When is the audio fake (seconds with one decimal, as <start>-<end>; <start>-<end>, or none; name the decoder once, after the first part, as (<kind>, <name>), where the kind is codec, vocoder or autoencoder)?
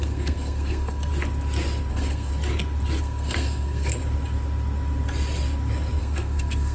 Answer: 0.0-1.1 (codec, SNAC); 1.9-2.3; 3.0-4.0; 6.0-6.7